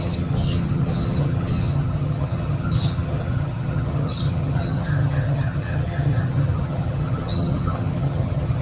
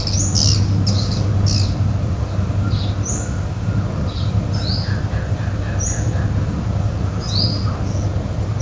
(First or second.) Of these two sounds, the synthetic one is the first